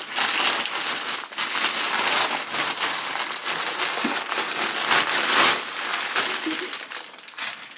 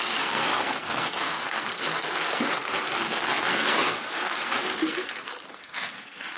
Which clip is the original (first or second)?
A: first